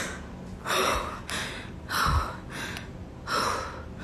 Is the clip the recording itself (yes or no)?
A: yes